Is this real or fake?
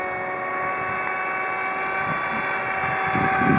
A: real